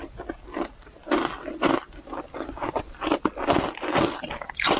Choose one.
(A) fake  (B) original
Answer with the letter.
B